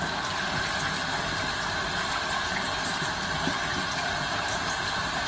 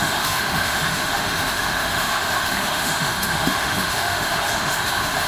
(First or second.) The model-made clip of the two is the second